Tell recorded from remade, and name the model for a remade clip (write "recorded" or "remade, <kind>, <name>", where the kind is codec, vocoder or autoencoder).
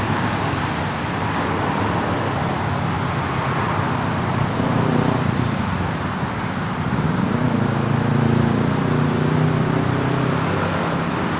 recorded